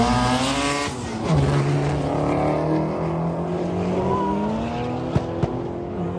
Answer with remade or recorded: recorded